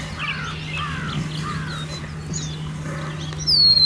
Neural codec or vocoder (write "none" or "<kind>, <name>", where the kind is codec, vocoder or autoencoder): none